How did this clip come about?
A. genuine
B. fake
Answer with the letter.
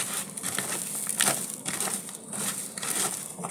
A